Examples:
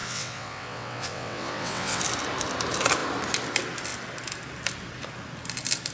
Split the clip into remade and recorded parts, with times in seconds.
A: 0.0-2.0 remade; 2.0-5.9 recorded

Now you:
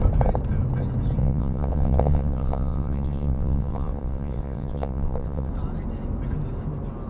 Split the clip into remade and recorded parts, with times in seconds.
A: 0.0-1.2 recorded; 1.2-5.5 remade; 5.5-7.1 recorded

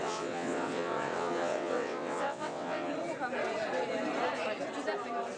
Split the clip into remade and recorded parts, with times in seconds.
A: 0.0-2.9 remade; 2.9-5.4 recorded

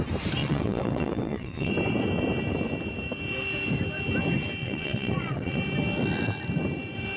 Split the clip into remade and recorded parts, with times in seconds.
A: 0.0-0.4 recorded; 0.4-1.7 remade; 1.7-4.6 recorded; 4.6-5.6 remade; 5.6-7.2 recorded

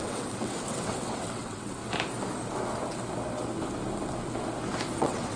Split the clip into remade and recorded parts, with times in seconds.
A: 0.0-1.8 remade; 1.8-5.0 recorded; 5.0-5.4 remade

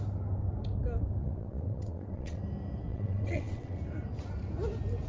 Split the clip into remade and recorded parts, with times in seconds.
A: 0.0-1.2 recorded; 1.2-2.4 remade; 2.4-2.9 recorded; 2.9-3.8 remade; 3.8-5.1 recorded